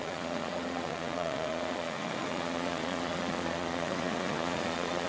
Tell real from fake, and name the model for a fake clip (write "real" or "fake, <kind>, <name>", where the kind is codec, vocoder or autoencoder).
fake, vocoder, Vocos